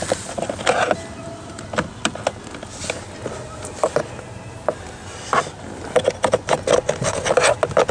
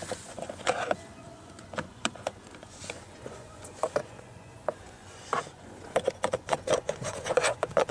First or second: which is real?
first